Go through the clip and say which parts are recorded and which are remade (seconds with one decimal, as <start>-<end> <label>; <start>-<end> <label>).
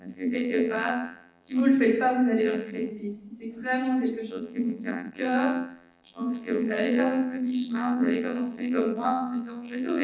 0.0-1.6 remade; 1.6-2.4 recorded; 2.4-2.9 remade; 2.9-4.3 recorded; 4.3-10.0 remade